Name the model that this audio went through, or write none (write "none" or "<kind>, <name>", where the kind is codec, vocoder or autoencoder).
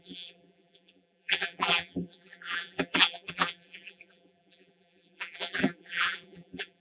vocoder, BigVGAN v2